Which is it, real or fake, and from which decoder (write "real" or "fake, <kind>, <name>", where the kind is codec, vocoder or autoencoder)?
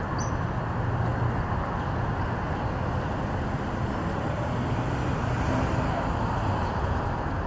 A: real